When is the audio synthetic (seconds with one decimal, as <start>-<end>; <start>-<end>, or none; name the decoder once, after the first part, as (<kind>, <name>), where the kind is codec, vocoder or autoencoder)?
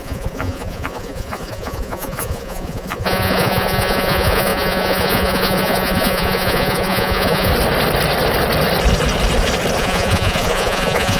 0.0-7.5 (vocoder, Vocos); 9.8-11.2